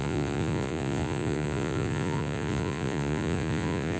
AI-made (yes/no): yes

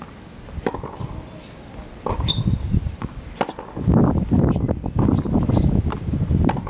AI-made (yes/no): no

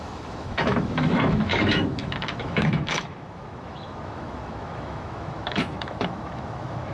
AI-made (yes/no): yes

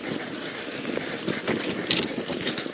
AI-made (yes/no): no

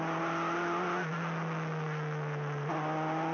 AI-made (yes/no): no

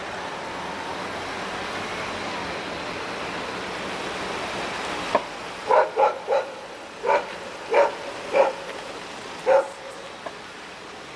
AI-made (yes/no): no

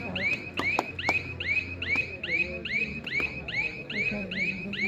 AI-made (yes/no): no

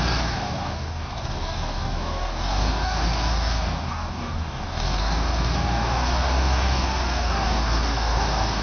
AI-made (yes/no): yes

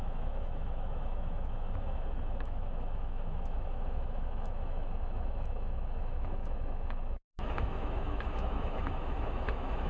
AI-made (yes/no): yes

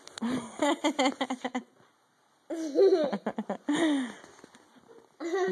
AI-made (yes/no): no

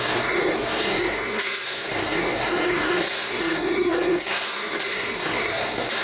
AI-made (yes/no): yes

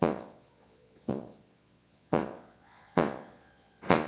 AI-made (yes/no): yes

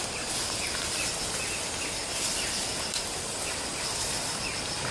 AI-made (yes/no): no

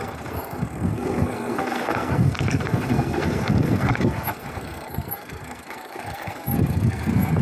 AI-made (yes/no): yes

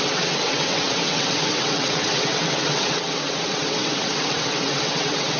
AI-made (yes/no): yes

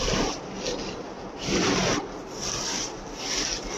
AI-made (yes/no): no